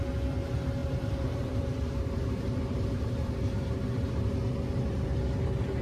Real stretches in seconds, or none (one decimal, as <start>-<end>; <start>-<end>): 0.0-0.8; 4.3-5.8